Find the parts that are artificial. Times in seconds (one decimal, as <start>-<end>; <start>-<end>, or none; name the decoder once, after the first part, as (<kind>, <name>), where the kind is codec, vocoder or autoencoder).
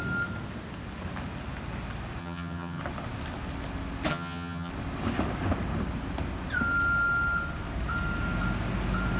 2.2-2.8 (vocoder, HiFi-GAN); 4.1-4.7